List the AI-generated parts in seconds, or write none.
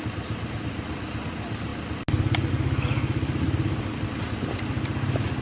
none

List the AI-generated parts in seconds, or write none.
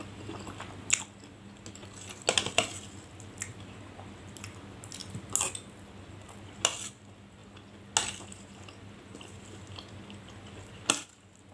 none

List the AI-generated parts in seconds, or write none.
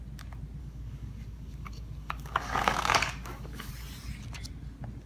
0.6-3.7 (codec, DAC)